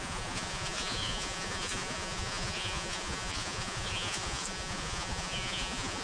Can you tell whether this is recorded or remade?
remade